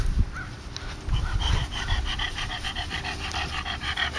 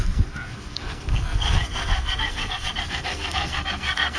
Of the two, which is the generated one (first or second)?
second